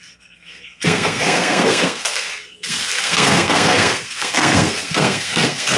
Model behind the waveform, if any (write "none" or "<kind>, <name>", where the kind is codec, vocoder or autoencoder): codec, SNAC